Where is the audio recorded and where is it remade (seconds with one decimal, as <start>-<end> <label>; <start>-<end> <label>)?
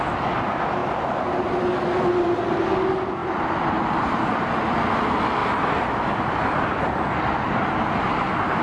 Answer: 0.0-8.6 recorded